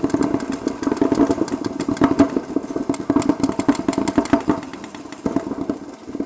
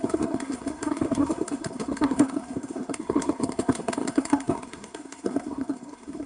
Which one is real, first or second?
first